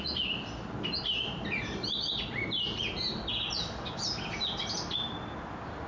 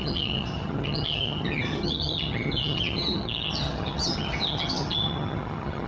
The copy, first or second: second